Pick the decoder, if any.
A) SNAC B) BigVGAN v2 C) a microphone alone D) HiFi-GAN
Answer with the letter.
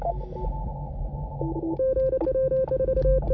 C